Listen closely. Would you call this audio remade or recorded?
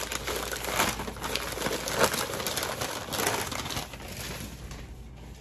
recorded